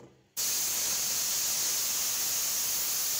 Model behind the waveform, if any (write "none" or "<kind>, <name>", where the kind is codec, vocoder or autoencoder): none